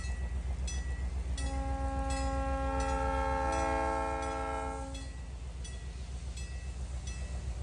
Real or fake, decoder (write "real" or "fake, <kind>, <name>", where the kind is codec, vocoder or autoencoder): real